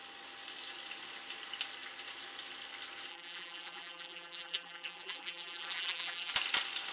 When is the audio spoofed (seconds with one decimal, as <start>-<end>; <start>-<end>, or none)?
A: 3.1-6.3